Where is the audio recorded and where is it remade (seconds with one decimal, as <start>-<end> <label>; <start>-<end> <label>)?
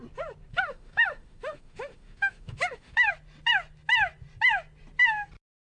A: 0.0-0.5 recorded; 0.5-3.1 remade; 3.1-5.8 recorded